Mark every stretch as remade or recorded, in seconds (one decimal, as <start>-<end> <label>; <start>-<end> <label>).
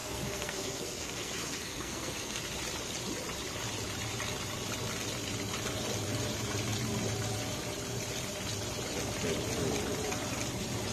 0.0-2.4 remade; 2.4-10.9 recorded